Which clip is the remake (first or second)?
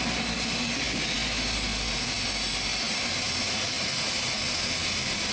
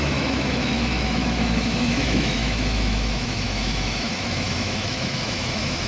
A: second